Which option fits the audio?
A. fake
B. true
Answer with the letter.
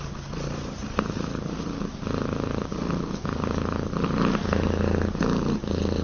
B